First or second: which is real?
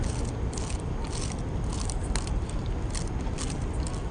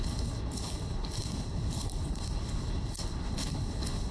first